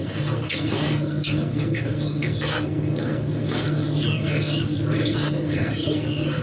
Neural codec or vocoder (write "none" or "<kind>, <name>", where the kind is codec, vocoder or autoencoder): codec, SNAC